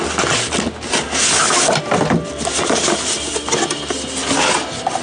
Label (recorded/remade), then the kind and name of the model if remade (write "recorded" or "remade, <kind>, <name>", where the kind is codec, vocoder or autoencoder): recorded